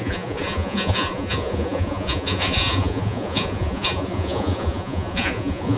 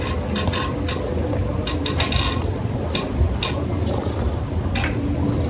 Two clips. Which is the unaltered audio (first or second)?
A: second